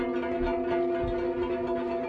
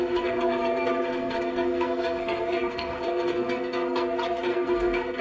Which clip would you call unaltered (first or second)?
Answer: first